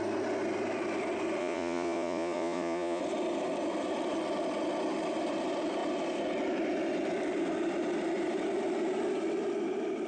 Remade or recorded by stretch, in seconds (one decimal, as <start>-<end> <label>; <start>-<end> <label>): 0.0-1.4 recorded; 1.4-3.0 remade; 3.0-10.1 recorded